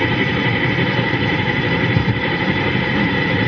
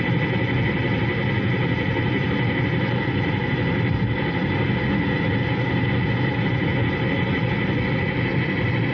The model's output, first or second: first